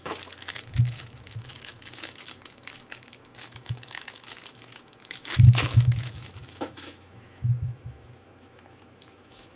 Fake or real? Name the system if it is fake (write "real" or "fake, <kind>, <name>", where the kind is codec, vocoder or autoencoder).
fake, autoencoder, DAC-VAE